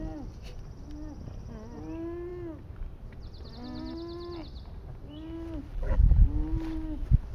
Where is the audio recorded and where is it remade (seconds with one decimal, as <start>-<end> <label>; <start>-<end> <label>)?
0.0-5.7 recorded; 5.7-6.2 remade; 6.2-7.3 recorded